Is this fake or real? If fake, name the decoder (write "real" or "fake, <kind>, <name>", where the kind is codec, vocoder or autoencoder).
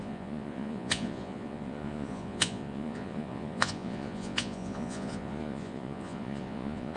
fake, vocoder, Vocos